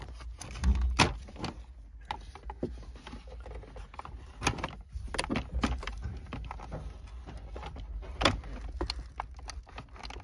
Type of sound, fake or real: real